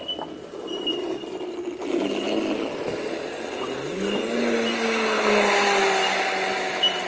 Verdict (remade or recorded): recorded